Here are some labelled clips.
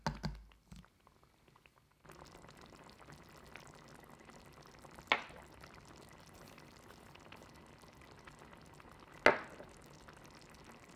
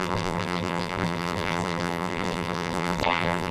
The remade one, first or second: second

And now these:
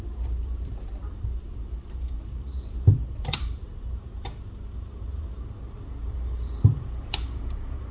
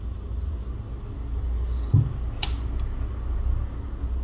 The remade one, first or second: first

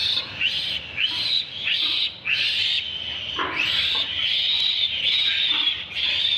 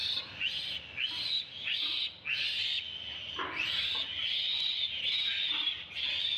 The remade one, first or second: first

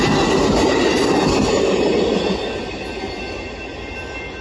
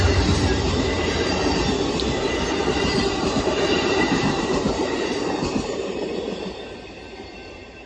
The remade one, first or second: second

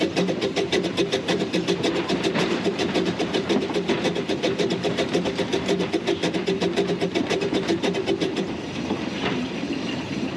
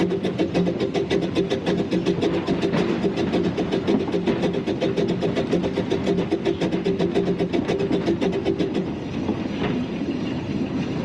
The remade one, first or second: first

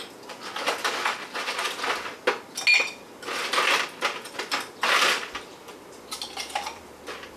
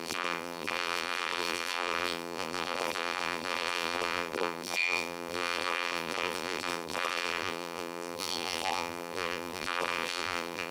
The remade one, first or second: second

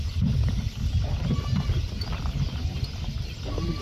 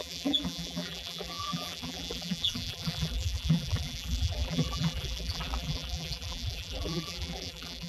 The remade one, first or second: second